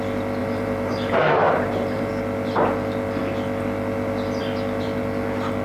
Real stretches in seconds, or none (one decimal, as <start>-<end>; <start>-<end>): 0.0-0.4; 2.1-5.6

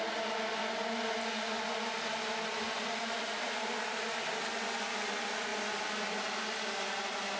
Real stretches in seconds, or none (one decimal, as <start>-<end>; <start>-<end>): 0.0-3.0; 4.3-7.4

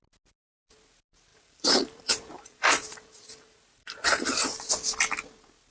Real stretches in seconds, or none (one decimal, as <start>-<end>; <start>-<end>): 0.0-1.3; 4.7-5.7

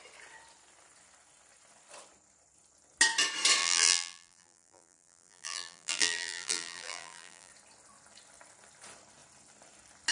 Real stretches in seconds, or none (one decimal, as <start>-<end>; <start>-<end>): 0.0-3.6; 7.5-10.1

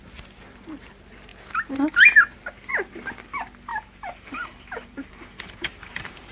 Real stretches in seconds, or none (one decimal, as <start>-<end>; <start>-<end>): 0.0-3.7

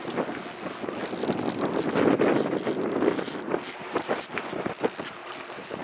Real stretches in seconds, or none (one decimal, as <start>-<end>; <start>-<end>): 0.0-5.2